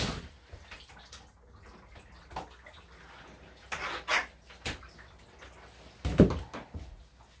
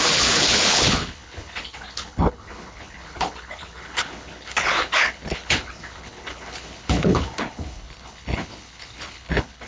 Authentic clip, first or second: first